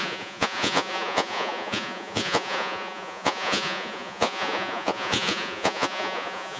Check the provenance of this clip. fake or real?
fake